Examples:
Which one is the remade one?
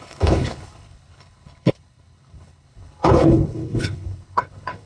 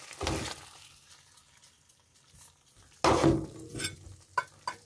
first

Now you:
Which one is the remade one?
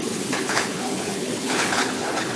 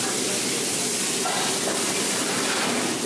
first